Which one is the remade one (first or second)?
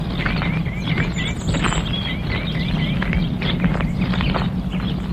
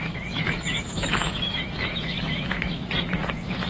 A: second